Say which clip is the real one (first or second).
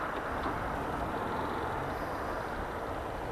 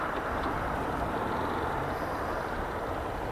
first